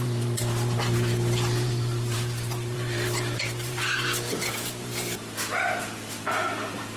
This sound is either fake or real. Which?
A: fake